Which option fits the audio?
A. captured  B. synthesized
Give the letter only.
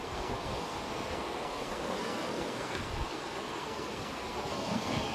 B